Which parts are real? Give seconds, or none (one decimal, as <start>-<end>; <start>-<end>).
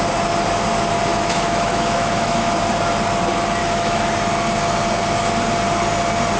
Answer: 0.0-1.1; 2.5-3.6; 4.1-6.4